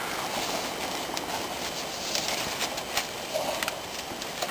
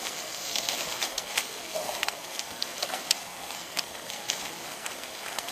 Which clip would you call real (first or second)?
first